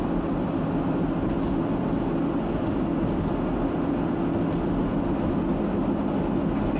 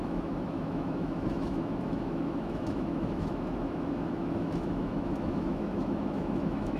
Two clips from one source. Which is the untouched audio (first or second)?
first